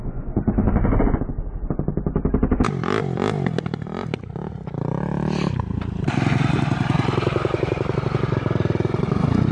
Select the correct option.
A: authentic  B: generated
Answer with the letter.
A